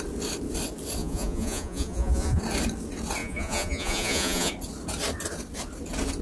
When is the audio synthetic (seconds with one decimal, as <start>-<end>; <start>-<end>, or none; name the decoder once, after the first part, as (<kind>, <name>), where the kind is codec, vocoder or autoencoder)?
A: 1.0-2.4 (vocoder, Vocos); 3.2-4.5